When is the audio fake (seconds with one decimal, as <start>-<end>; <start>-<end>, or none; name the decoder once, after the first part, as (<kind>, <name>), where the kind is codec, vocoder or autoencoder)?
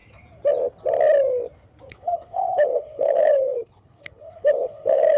1.9-5.2 (codec, HILCodec)